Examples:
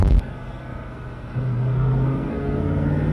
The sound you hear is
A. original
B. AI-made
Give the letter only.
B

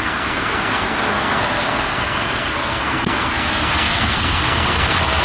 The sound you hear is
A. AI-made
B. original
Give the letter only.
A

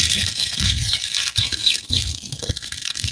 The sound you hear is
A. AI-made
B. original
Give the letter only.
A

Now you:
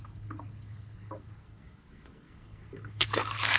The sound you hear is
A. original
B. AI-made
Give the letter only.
B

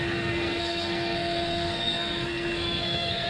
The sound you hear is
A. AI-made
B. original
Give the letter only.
A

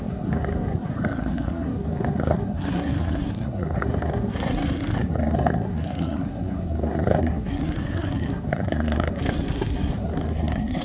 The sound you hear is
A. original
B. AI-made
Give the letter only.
B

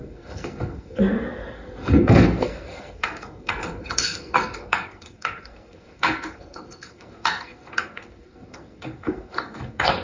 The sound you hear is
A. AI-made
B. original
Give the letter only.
A